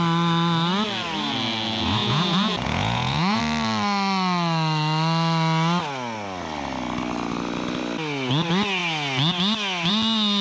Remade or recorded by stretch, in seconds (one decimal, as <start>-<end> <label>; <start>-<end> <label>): 0.0-2.0 recorded; 2.0-3.4 remade; 3.4-10.4 recorded

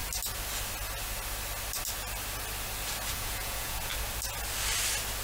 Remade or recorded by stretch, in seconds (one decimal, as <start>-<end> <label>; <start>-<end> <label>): 0.0-3.1 recorded; 3.1-3.9 remade; 3.9-5.2 recorded

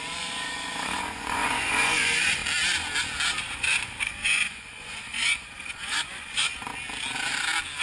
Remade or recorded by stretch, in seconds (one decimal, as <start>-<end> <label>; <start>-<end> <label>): 0.0-2.4 remade; 2.4-3.4 recorded; 3.4-6.7 remade; 6.7-7.8 recorded